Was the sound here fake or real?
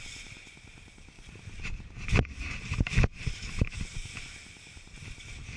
real